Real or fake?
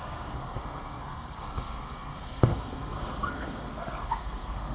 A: fake